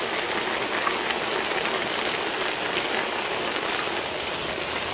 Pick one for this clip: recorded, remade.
recorded